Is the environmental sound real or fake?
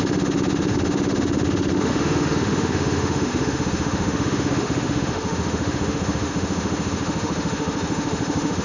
fake